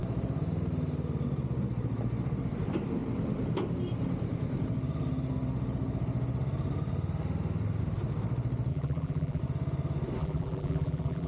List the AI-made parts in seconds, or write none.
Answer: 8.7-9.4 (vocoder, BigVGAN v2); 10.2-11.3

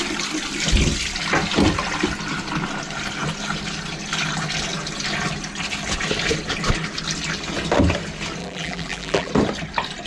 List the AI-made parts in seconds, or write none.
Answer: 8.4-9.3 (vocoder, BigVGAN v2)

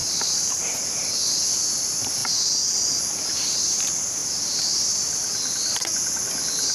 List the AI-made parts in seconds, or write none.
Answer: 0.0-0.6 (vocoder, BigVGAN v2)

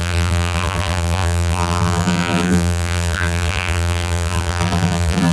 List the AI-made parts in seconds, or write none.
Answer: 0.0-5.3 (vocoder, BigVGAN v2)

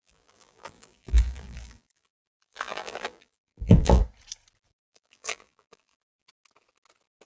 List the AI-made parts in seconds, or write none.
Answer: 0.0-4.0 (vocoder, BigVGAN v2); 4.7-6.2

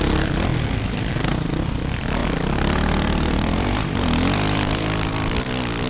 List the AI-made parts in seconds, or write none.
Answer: 0.0-0.5 (vocoder, BigVGAN v2); 1.1-5.9